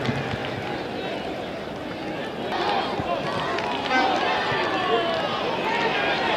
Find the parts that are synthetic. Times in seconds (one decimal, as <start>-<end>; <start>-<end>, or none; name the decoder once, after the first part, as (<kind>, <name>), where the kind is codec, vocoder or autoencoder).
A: none